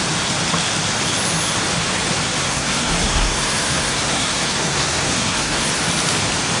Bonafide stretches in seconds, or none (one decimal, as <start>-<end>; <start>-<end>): 0.0-2.4; 5.7-6.6